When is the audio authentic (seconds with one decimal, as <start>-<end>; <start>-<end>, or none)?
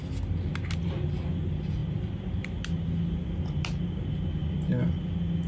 0.0-5.5